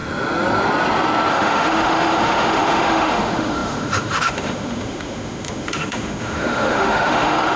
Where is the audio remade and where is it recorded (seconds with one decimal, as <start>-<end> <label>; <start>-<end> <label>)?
0.0-1.3 recorded; 1.3-7.6 remade